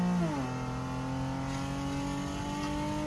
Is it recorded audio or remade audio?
recorded